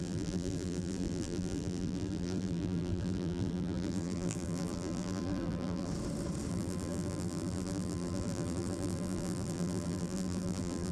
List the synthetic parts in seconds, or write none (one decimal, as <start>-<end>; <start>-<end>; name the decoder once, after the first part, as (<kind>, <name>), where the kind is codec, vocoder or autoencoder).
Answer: 0.0-5.9 (vocoder, BigVGAN v2); 6.5-10.9